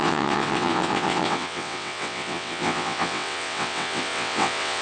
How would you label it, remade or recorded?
remade